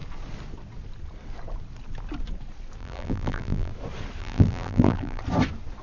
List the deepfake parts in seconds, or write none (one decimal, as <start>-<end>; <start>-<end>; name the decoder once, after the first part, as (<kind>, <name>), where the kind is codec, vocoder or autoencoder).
2.8-3.7 (vocoder, BigVGAN v2); 4.2-5.2